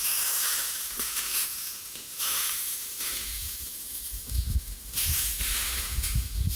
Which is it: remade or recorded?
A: remade